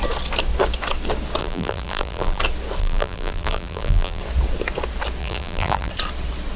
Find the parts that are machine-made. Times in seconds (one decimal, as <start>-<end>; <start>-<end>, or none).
1.4-2.4; 2.8-4.2; 5.2-5.9

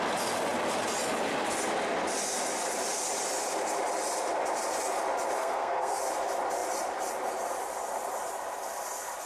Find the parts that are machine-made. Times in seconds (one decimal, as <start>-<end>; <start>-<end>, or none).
5.4-6.0

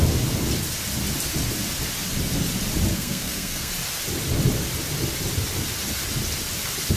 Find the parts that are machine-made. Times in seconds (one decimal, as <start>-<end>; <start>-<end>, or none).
2.9-3.7

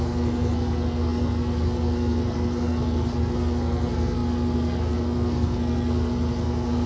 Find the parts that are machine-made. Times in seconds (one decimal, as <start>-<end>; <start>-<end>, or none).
0.0-6.9

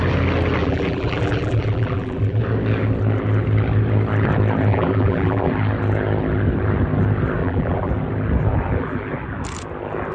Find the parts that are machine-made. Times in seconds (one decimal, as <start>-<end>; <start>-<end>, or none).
0.6-2.4; 4.7-5.5; 7.4-7.9